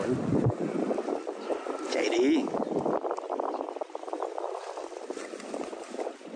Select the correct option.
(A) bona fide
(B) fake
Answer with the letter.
A